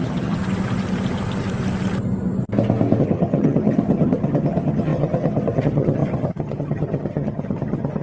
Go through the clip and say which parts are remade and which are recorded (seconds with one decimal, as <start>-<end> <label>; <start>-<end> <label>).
0.0-0.4 remade; 0.4-3.0 recorded; 3.0-8.0 remade